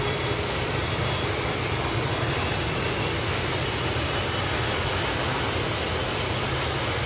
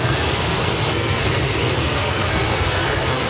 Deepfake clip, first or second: second